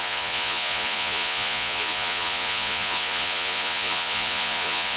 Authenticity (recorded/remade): remade